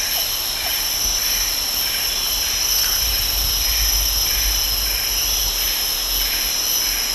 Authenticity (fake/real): real